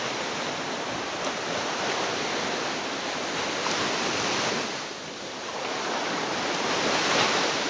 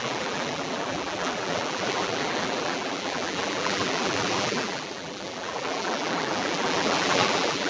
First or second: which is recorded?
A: first